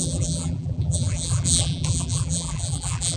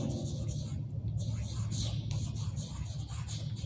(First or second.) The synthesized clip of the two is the first